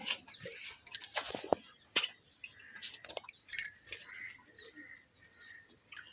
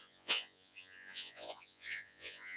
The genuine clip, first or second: first